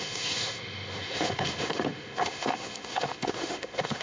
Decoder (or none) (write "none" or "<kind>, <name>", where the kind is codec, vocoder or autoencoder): autoencoder, DAC-VAE